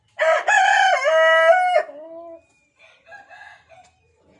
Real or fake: real